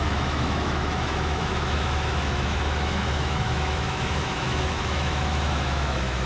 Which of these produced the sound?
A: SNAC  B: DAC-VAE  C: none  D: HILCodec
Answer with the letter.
B